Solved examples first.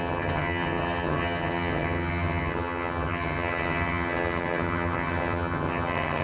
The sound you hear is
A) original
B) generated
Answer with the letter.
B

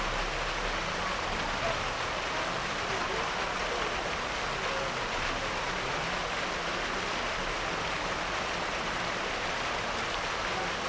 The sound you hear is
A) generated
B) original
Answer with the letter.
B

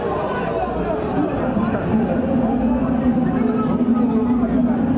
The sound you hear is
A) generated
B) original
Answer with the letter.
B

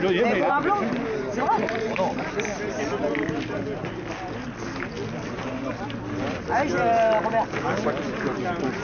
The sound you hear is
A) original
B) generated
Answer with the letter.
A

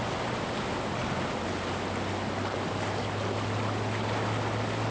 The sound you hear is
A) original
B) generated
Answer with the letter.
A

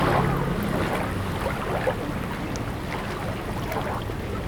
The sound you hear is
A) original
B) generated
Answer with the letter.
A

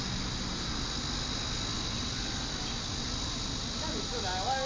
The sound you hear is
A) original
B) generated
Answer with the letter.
A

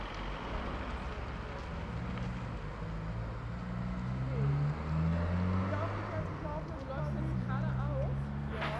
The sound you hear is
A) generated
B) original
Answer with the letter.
B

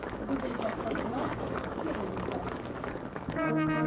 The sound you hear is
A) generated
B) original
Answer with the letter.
A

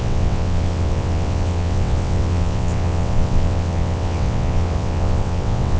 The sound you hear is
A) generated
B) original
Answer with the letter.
A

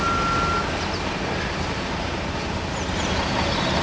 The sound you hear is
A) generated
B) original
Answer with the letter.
B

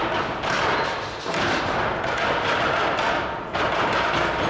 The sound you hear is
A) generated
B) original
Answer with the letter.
B